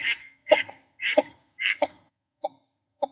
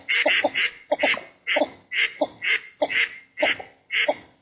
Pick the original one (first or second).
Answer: second